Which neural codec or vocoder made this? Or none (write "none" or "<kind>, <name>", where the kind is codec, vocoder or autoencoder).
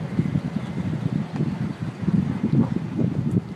none